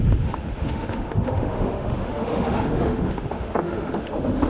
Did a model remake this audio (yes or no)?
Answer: yes